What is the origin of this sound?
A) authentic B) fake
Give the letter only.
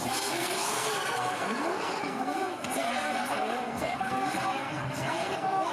B